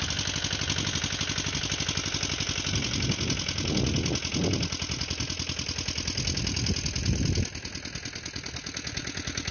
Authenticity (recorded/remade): recorded